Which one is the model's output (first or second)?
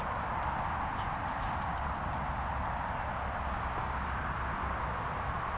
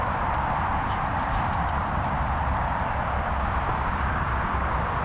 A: second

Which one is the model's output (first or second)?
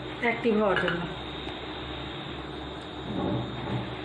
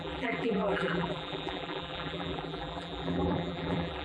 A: second